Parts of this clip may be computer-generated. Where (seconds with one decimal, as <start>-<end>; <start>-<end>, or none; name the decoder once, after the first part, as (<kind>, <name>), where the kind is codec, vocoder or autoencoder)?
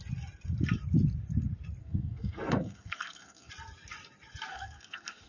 1.8-3.5 (codec, SNAC); 4.5-5.3